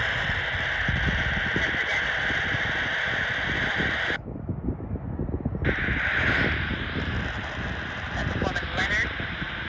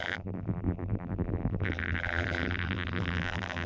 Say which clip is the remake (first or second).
second